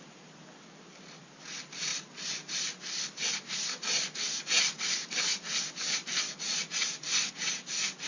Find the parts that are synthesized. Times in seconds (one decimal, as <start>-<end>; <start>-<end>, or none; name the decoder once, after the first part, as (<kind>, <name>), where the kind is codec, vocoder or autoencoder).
none